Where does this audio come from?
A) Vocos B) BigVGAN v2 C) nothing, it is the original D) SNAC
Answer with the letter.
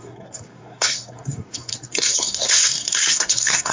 D